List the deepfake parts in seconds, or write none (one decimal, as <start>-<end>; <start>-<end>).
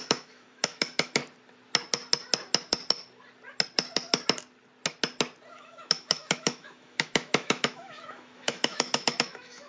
0.0-1.2; 5.5-9.7